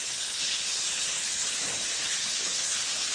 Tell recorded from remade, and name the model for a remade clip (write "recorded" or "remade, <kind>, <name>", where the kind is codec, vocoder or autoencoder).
remade, codec, HILCodec